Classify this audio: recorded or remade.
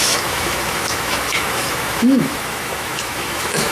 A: remade